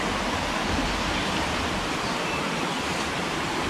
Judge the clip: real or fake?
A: fake